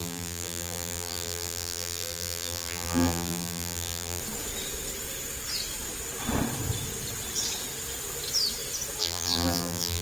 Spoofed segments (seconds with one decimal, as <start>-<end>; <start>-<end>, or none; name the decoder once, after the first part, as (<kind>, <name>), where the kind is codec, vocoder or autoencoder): 0.0-4.2 (vocoder, BigVGAN v2); 9.0-10.0